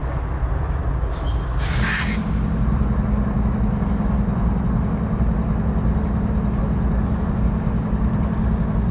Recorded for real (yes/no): yes